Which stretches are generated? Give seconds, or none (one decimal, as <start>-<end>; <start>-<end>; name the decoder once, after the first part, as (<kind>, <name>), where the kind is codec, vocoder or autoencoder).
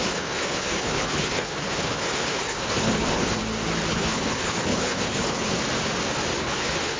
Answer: 0.0-3.4 (codec, HILCodec); 3.9-5.6; 6.4-7.0